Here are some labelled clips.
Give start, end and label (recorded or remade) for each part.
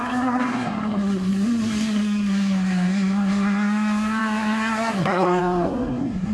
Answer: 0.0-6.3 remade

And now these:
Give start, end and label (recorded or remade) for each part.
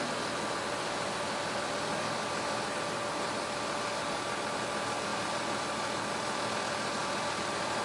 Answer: 0.0-5.1 recorded; 5.1-6.5 remade; 6.5-7.0 recorded; 7.0-7.8 remade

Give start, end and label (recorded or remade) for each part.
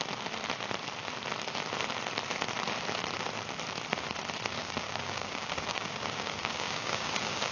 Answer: 0.0-4.6 recorded; 4.6-7.5 remade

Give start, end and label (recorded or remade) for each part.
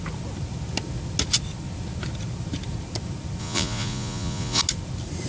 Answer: 0.0-3.4 recorded; 3.4-4.6 remade; 4.6-5.3 recorded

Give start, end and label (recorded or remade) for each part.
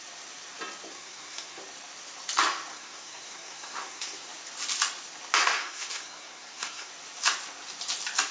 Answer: 0.0-0.9 recorded; 0.9-1.6 remade; 1.6-2.7 recorded; 2.7-4.3 remade; 4.3-5.4 recorded; 5.4-6.9 remade; 6.9-8.3 recorded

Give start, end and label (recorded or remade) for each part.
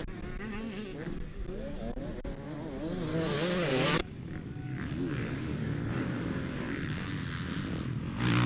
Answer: 0.0-1.3 recorded; 1.3-2.0 remade; 2.0-3.1 recorded; 3.1-7.1 remade; 7.1-8.5 recorded